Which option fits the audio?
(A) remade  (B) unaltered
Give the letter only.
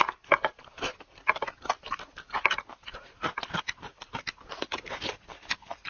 B